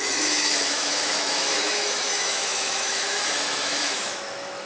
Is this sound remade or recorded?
remade